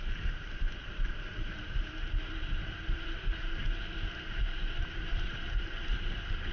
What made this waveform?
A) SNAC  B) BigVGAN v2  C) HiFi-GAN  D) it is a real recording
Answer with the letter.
B